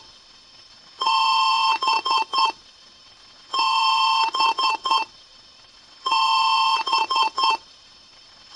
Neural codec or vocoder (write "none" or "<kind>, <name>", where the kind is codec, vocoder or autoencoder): vocoder, WaveNeXt